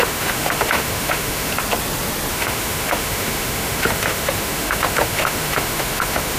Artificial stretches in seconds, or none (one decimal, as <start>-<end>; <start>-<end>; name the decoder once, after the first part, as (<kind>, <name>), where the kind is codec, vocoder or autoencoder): 0.0-1.5 (autoencoder, DAC-VAE); 2.3-6.4